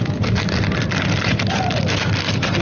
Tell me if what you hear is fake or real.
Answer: real